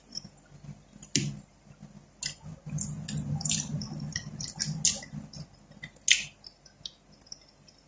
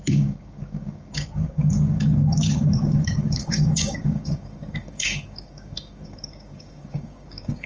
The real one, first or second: first